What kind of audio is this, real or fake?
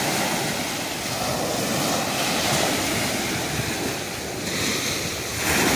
real